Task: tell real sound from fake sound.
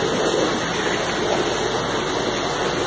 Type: real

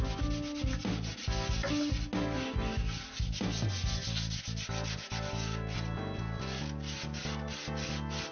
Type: real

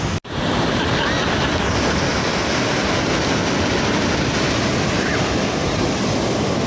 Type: real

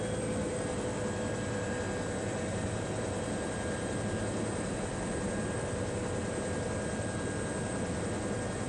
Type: real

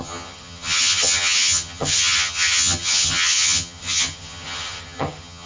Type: fake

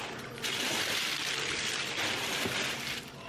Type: fake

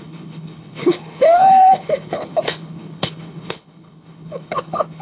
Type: fake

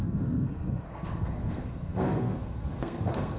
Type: fake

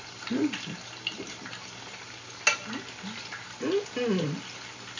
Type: real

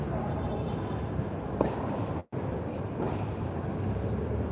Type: real